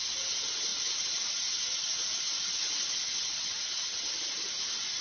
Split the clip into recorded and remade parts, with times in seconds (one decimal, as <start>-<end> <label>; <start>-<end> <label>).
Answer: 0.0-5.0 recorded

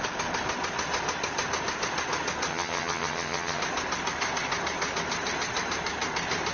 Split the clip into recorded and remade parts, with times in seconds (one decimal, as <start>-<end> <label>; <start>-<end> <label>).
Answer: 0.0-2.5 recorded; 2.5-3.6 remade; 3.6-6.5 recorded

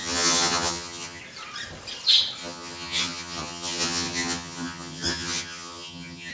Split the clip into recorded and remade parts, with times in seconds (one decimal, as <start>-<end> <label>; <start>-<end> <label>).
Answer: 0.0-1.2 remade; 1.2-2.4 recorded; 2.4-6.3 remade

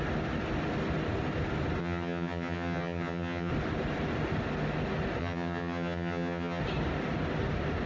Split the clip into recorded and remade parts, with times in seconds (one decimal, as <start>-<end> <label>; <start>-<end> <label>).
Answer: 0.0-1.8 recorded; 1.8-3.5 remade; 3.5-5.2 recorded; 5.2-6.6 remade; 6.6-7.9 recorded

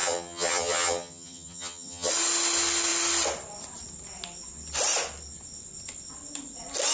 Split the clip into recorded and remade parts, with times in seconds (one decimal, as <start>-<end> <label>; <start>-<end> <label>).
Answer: 0.0-2.1 remade; 2.1-6.9 recorded

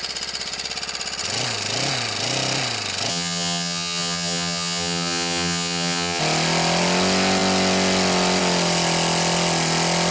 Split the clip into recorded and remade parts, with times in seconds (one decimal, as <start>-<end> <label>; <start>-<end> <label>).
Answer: 0.0-3.1 recorded; 3.1-6.2 remade; 6.2-10.1 recorded

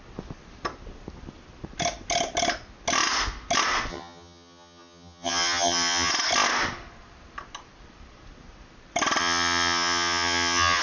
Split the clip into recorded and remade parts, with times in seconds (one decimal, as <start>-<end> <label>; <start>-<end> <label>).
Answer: 0.0-3.9 recorded; 3.9-6.1 remade; 6.1-9.2 recorded; 9.2-10.8 remade